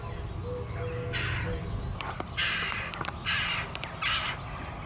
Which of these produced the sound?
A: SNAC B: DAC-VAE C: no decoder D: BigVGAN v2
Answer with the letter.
C